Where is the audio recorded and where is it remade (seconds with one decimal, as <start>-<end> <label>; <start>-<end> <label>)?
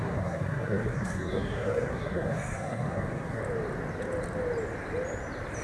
0.0-3.4 remade; 3.4-5.6 recorded